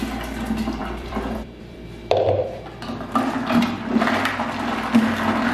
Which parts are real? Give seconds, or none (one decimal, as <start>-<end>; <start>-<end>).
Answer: 0.0-0.8; 3.3-5.5